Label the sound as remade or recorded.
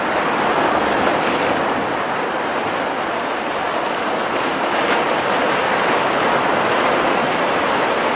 recorded